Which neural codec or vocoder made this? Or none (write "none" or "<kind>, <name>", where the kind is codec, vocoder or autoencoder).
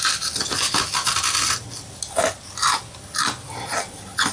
none